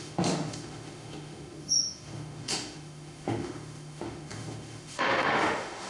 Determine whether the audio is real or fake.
fake